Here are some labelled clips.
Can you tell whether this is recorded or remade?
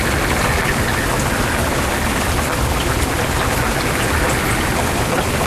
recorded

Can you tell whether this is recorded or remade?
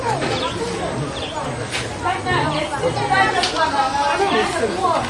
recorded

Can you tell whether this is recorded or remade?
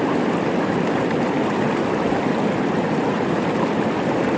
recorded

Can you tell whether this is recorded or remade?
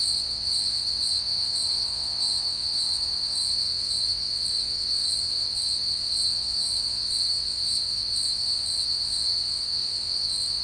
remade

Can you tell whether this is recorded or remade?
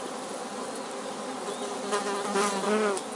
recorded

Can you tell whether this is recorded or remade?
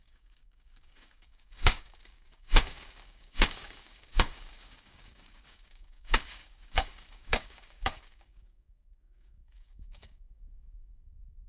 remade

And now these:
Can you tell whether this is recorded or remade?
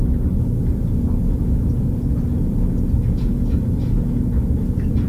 recorded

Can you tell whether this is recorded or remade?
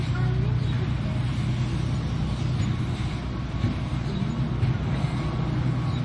recorded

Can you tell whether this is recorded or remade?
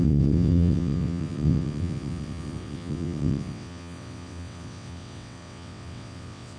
remade